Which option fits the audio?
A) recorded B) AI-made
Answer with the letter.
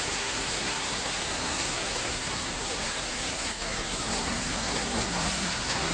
B